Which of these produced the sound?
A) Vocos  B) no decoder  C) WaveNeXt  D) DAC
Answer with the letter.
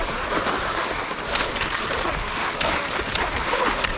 B